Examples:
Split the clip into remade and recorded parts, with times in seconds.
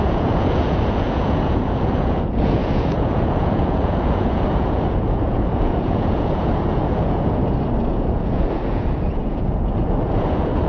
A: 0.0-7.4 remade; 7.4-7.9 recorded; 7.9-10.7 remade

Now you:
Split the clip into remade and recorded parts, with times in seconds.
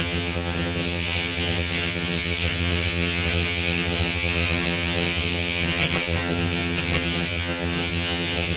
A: 0.0-8.6 remade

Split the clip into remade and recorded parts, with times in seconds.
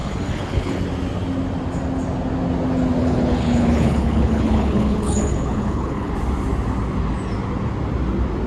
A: 0.0-0.8 remade; 0.8-3.0 recorded; 3.0-6.1 remade; 6.1-8.5 recorded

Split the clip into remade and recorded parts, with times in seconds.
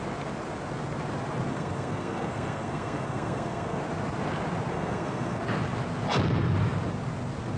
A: 0.0-1.5 recorded; 1.5-3.8 remade; 3.8-4.7 recorded; 4.7-5.4 remade; 5.4-7.6 recorded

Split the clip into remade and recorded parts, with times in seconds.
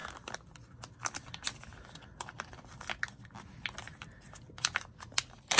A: 0.0-5.6 recorded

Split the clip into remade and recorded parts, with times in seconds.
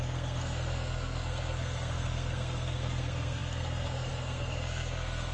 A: 0.0-5.3 remade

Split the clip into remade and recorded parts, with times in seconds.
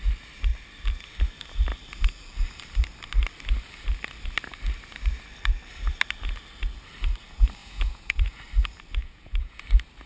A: 0.0-7.6 recorded; 7.6-8.4 remade; 8.4-9.0 recorded; 9.0-9.6 remade; 9.6-10.1 recorded